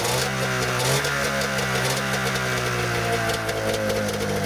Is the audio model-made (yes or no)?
no